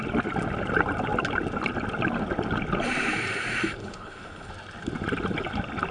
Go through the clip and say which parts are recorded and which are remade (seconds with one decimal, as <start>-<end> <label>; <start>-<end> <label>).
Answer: 0.0-3.8 recorded; 3.8-4.5 remade; 4.5-5.9 recorded